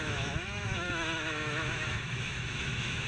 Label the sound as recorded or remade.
remade